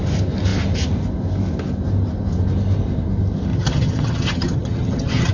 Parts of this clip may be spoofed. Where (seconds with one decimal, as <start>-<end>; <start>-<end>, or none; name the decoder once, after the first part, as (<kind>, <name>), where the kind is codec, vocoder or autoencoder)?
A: 3.5-5.3 (vocoder, HiFi-GAN)